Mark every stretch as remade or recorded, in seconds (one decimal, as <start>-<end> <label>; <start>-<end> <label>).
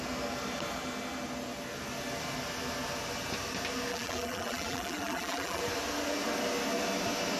0.0-3.9 recorded; 3.9-5.6 remade; 5.6-7.4 recorded